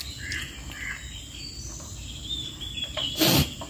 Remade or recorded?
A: recorded